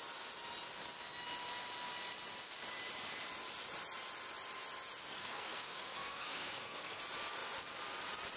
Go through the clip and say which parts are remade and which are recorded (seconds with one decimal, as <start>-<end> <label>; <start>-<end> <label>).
0.0-5.1 recorded; 5.1-7.0 remade; 7.0-8.4 recorded